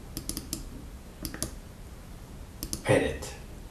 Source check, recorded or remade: recorded